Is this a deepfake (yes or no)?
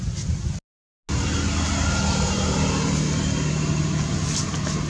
no